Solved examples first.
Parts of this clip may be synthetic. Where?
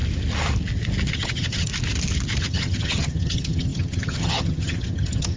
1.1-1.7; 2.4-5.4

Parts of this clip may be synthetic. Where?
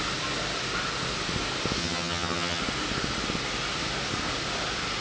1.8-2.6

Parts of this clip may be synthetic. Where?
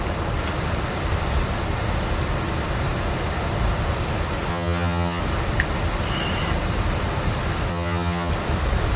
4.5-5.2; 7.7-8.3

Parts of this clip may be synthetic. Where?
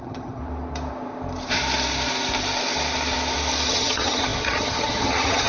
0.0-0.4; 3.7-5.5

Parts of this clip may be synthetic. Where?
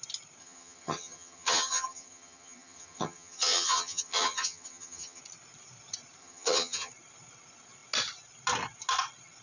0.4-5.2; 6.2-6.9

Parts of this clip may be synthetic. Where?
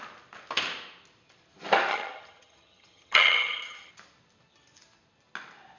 1.9-3.9